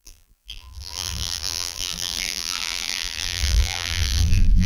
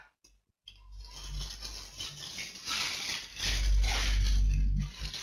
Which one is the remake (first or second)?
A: first